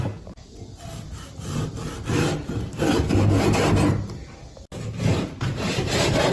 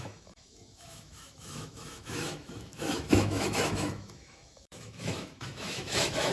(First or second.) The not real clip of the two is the second